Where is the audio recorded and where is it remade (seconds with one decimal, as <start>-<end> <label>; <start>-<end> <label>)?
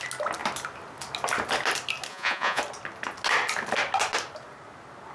0.0-2.1 recorded; 2.1-2.6 remade; 2.6-5.1 recorded